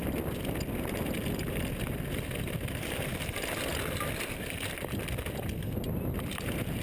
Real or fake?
real